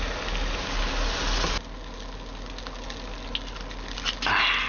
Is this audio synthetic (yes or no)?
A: no